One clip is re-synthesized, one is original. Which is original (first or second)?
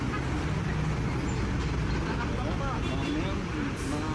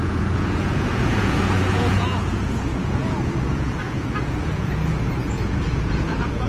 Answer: first